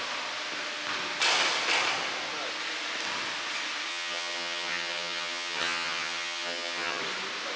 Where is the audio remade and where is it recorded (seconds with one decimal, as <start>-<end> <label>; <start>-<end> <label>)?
0.0-3.9 recorded; 3.9-7.0 remade; 7.0-7.6 recorded